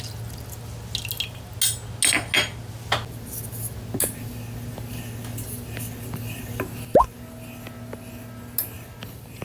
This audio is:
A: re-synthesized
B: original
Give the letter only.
B